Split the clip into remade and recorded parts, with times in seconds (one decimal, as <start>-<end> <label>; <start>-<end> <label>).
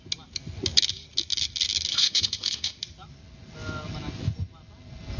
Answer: 0.0-1.9 recorded; 1.9-2.8 remade; 2.8-5.2 recorded